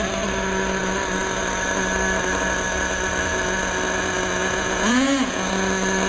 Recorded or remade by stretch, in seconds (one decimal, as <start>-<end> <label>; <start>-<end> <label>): 0.0-4.4 recorded; 4.4-5.5 remade; 5.5-6.1 recorded